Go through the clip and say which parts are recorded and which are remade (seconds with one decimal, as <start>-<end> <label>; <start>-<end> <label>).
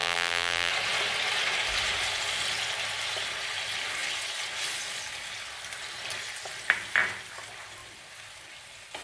0.0-0.7 remade; 0.7-9.0 recorded